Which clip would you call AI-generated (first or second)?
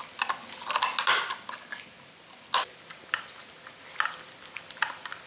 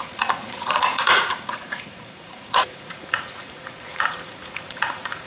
second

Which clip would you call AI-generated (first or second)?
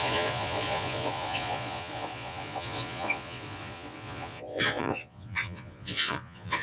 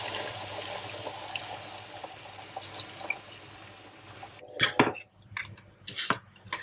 first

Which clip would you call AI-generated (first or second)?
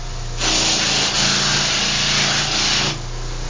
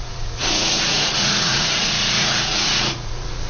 second